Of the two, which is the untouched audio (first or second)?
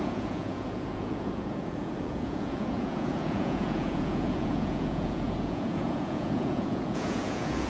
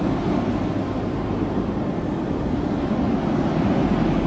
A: second